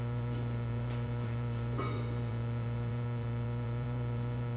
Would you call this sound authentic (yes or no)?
no